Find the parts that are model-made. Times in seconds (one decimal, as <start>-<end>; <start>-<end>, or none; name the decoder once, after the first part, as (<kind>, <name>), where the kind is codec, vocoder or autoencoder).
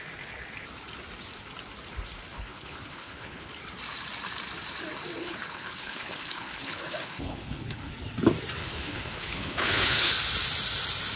2.3-3.5 (codec, HILCodec); 5.2-7.9; 8.6-10.1